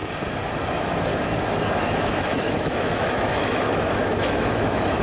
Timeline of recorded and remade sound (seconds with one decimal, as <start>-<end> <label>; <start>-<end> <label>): 0.0-0.7 recorded; 0.7-1.1 remade; 1.1-2.0 recorded; 2.0-5.0 remade